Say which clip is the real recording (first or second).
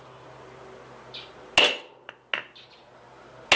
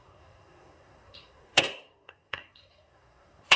first